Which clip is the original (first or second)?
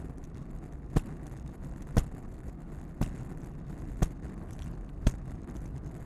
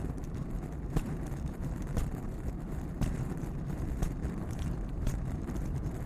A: first